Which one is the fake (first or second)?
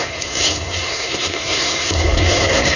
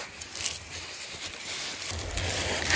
first